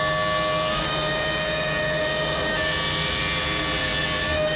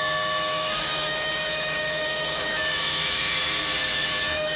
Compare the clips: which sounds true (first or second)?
first